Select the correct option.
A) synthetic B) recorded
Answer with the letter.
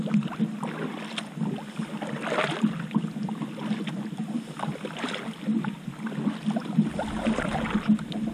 B